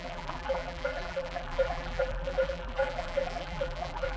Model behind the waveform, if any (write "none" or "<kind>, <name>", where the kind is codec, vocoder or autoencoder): vocoder, BigVGAN v2